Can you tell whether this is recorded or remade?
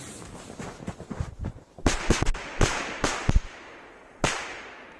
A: recorded